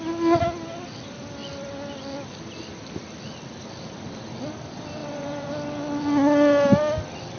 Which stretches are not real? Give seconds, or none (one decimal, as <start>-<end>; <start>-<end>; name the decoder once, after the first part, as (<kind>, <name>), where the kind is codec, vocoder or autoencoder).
5.0-5.5 (vocoder, BigVGAN v2)